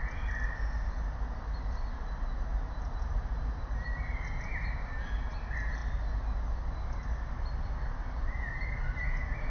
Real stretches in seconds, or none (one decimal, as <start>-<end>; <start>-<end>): 0.0-9.5